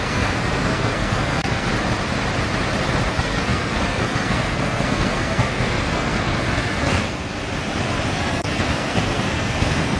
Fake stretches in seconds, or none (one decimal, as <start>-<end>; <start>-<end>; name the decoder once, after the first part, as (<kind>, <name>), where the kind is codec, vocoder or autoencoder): 0.0-1.7 (codec, SNAC); 3.1-7.4; 8.1-10.0